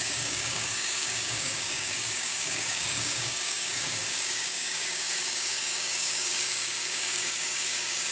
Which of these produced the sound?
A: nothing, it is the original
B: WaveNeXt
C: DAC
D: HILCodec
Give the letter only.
C